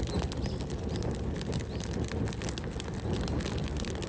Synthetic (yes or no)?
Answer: no